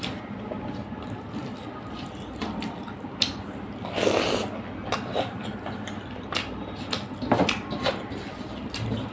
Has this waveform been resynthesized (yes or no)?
no